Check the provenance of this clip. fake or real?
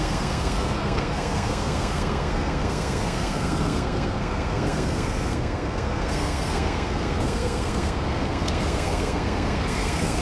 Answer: fake